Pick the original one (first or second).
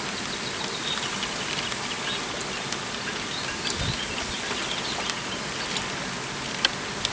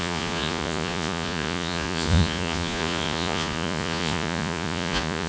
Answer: first